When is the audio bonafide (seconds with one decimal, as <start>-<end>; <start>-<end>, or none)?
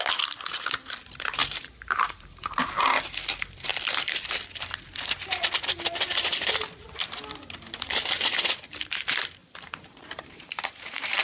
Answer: 0.0-1.4; 2.7-9.4